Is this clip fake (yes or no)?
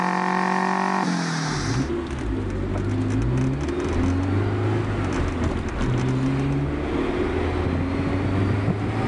no